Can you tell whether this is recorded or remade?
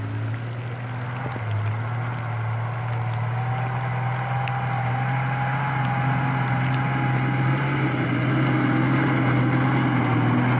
recorded